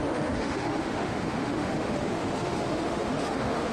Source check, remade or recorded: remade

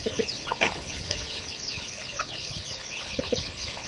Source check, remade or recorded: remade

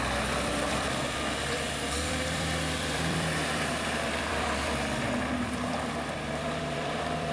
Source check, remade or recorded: remade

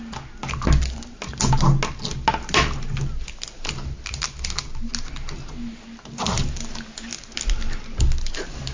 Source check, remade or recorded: recorded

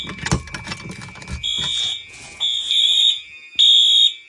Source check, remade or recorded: recorded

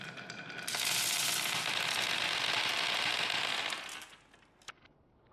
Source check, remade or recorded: recorded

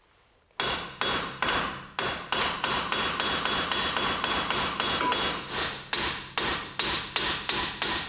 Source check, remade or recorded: recorded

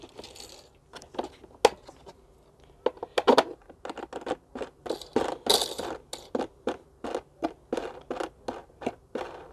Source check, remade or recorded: recorded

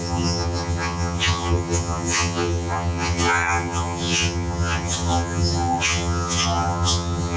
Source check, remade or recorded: remade